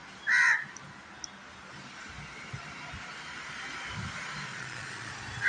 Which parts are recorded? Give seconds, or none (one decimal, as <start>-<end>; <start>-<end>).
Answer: 0.0-4.5; 5.1-5.5